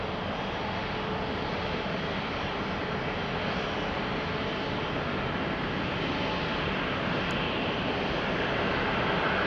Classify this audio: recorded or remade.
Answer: recorded